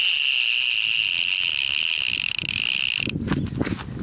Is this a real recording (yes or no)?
yes